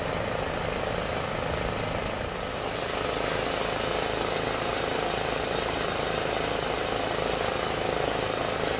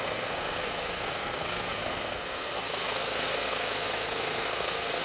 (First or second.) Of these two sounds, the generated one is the second